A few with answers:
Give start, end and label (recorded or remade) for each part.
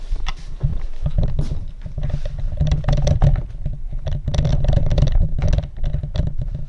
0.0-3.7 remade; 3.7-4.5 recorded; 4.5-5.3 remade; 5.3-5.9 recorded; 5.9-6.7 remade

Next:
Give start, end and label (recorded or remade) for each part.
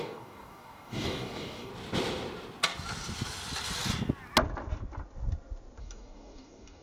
0.0-1.7 remade; 1.7-5.8 recorded; 5.8-6.8 remade